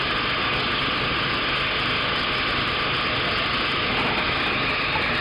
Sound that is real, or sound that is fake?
real